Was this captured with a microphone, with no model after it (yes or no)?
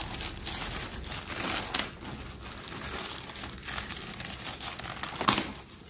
yes